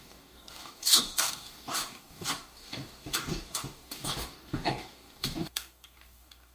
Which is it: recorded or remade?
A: remade